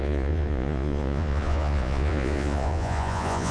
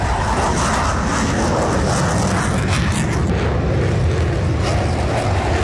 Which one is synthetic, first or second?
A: first